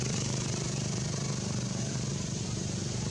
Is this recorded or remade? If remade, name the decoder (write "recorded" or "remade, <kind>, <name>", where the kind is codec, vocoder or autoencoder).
remade, vocoder, BigVGAN v2